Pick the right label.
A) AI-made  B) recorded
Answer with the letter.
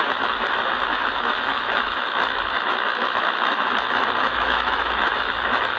A